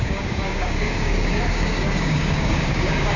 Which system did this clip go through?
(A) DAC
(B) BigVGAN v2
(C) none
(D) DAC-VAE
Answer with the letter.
A